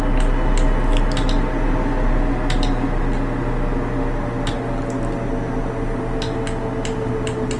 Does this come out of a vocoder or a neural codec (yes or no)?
no